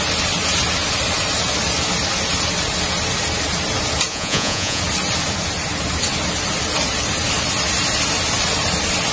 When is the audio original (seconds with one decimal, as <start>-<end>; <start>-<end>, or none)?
0.0-4.1; 4.8-9.1